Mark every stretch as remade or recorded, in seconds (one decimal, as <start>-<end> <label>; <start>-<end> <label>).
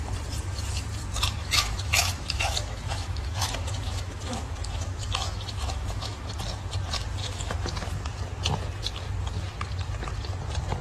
0.0-1.4 recorded; 1.4-6.3 remade; 6.3-7.2 recorded; 7.2-7.7 remade; 7.7-10.8 recorded